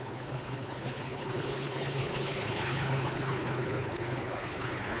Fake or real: fake